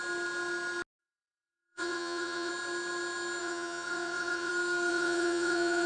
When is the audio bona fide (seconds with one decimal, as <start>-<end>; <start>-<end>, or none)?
0.0-1.0; 2.5-3.4; 4.5-4.9